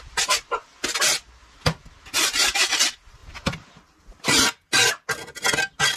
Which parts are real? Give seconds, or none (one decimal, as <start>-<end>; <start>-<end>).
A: 0.0-3.2; 4.3-6.0

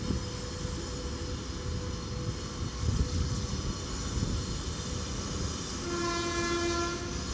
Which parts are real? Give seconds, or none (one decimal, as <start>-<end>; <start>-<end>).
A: 0.0-2.7; 3.5-7.3